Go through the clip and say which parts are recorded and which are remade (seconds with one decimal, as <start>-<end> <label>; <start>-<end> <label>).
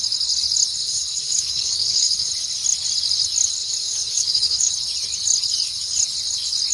0.0-0.8 recorded; 0.8-2.3 remade; 2.3-3.6 recorded; 3.6-4.7 remade; 4.7-6.7 recorded